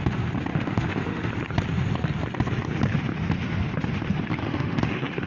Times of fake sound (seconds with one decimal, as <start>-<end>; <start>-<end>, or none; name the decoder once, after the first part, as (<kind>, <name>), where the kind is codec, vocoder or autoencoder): 0.5-1.3 (autoencoder, DAC-VAE); 4.4-5.3